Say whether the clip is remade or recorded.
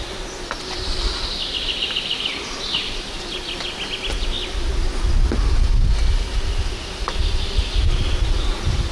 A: recorded